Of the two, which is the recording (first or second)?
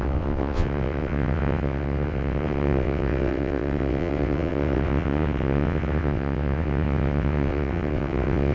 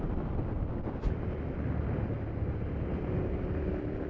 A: second